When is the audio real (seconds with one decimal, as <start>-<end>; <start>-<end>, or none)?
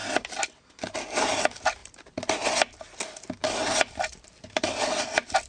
1.3-1.8; 2.4-3.4